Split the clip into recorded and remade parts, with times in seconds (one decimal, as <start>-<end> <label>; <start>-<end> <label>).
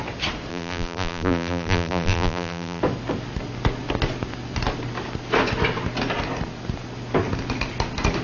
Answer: 0.0-0.5 recorded; 0.5-2.8 remade; 2.8-8.2 recorded